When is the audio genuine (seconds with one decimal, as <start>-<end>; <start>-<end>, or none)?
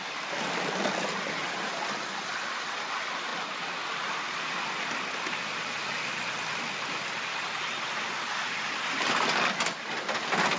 0.0-10.6